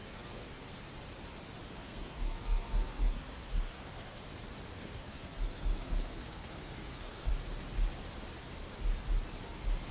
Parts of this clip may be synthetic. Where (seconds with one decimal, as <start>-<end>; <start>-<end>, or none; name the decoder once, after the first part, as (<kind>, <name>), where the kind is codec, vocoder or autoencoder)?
0.0-0.8 (codec, SNAC); 1.7-4.2; 4.8-7.3